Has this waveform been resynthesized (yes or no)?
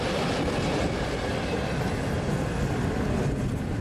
no